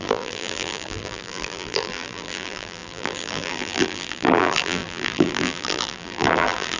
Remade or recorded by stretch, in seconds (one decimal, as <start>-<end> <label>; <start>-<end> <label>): 0.0-6.8 remade